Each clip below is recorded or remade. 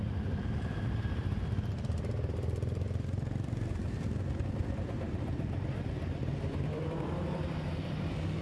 remade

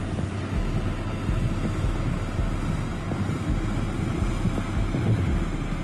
recorded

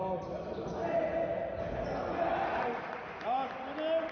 recorded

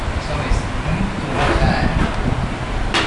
recorded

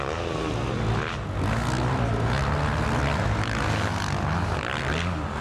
recorded